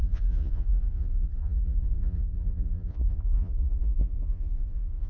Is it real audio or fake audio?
fake